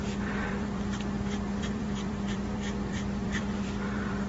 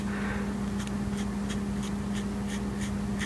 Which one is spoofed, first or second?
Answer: first